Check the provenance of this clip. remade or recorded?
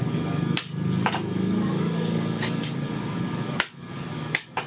remade